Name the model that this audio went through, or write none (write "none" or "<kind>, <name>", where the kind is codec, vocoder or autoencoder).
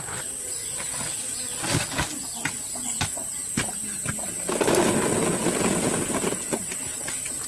none